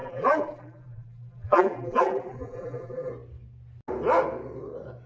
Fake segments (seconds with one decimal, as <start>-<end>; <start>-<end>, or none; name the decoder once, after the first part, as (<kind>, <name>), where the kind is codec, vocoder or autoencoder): 0.0-3.1 (vocoder, BigVGAN v2)